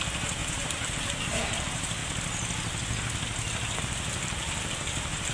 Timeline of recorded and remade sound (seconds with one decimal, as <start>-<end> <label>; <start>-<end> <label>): 0.0-2.0 remade; 2.0-3.8 recorded; 3.8-5.3 remade